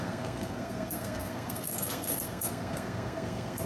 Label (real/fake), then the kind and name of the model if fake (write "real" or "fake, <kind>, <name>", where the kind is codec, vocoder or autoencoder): fake, codec, SNAC